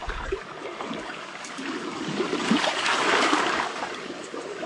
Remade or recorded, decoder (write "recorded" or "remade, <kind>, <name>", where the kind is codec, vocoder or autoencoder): remade, codec, DAC